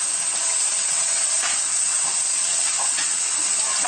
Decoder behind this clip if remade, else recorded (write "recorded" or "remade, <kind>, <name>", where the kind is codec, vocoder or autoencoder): remade, vocoder, WaveNeXt